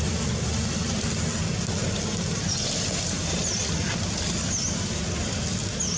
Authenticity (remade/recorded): recorded